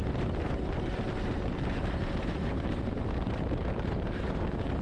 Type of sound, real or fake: real